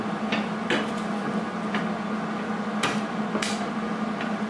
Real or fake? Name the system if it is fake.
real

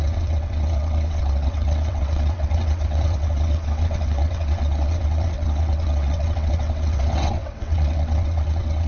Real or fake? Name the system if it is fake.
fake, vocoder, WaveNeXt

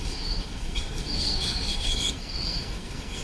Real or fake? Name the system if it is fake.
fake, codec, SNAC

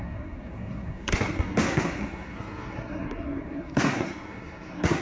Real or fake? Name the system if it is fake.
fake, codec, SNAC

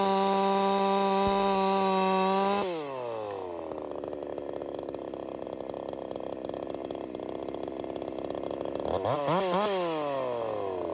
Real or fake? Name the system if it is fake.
real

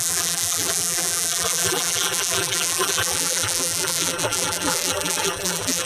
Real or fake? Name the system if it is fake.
fake, vocoder, BigVGAN v2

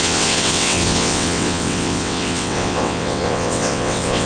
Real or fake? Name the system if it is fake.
fake, vocoder, WaveNeXt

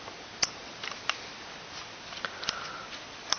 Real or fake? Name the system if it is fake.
real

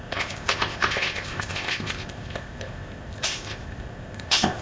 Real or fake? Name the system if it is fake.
fake, codec, ZipCodec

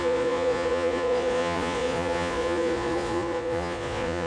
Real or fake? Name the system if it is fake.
fake, vocoder, Vocos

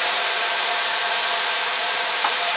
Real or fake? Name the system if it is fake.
fake, vocoder, BigVGAN v2